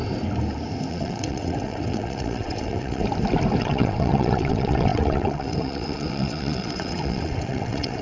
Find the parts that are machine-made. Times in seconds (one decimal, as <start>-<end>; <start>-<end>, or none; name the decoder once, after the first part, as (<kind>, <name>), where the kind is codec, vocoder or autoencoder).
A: 0.9-3.0 (vocoder, WaveNeXt); 3.6-8.0